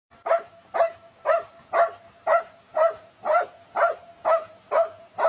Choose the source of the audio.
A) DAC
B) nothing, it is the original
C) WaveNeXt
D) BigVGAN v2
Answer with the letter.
B